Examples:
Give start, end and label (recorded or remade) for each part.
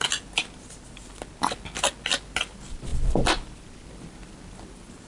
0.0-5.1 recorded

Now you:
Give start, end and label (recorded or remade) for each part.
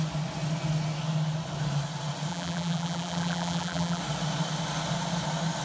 0.0-2.3 recorded; 2.3-4.0 remade; 4.0-5.6 recorded